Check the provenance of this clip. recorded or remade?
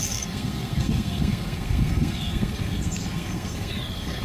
remade